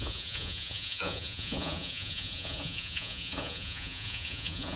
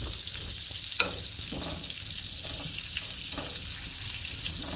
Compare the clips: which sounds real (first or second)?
second